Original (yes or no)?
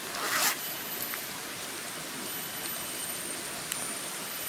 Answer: yes